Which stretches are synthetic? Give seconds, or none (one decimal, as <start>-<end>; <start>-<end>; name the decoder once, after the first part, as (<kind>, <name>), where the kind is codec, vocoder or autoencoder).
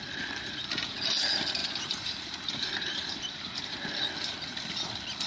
1.6-2.5 (vocoder, BigVGAN v2); 3.0-3.9